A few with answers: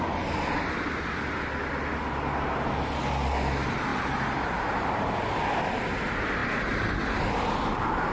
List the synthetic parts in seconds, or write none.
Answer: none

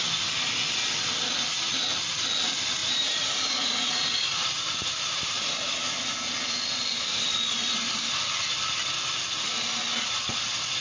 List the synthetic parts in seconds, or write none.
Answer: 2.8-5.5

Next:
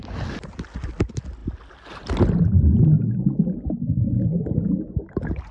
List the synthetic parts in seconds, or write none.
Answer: none

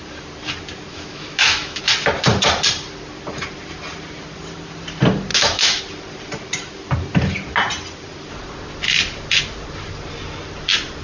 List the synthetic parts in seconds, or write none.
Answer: 0.9-1.8; 5.3-5.8

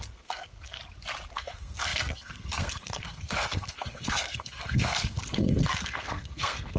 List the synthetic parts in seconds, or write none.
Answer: 0.0-0.8; 1.3-6.8

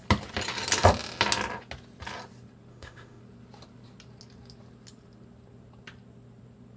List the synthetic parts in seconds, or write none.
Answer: 2.7-3.2

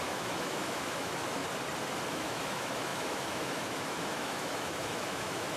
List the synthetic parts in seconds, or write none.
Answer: 0.0-1.4; 2.1-5.6